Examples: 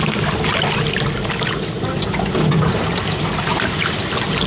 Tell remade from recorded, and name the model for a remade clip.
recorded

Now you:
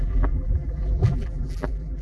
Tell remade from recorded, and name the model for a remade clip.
remade, vocoder, BigVGAN v2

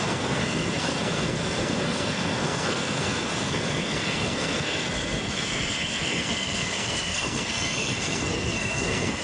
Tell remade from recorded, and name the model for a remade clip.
remade, codec, SNAC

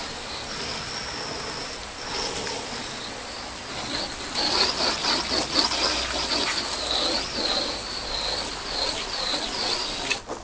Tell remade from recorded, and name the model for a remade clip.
recorded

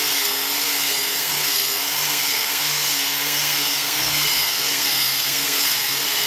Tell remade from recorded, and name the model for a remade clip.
remade, codec, SNAC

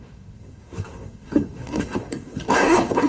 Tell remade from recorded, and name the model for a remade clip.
remade, codec, SNAC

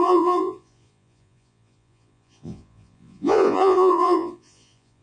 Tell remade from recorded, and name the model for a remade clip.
remade, vocoder, Vocos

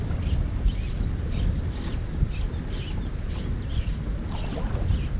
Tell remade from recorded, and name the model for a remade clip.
recorded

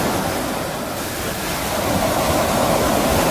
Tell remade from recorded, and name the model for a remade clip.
recorded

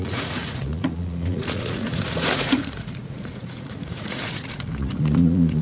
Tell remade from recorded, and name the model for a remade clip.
remade, vocoder, Vocos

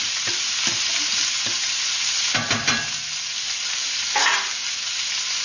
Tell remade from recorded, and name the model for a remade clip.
recorded